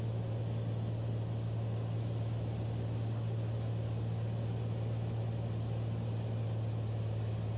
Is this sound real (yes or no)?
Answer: yes